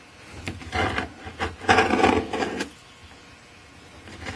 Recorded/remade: recorded